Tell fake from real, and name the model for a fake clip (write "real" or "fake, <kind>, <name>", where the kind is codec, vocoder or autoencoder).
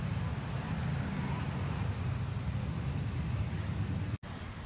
real